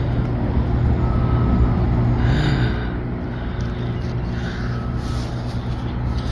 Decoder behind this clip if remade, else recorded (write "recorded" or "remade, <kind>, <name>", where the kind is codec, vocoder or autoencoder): recorded